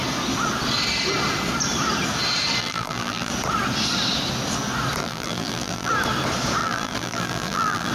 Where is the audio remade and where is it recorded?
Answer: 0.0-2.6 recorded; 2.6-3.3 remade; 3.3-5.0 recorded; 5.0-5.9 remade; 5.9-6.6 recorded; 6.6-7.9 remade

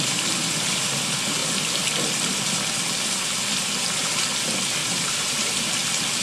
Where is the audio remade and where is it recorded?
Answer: 0.0-4.8 recorded; 4.8-5.7 remade; 5.7-6.2 recorded